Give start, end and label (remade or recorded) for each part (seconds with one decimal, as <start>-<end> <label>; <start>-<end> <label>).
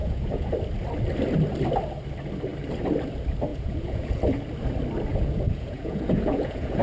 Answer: 0.0-0.5 remade; 0.5-3.5 recorded; 3.5-4.2 remade; 4.2-5.1 recorded; 5.1-6.8 remade